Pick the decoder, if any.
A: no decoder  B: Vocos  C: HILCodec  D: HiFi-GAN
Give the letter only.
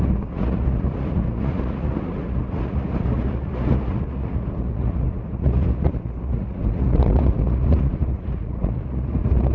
B